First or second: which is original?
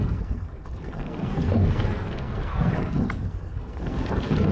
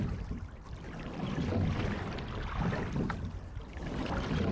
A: second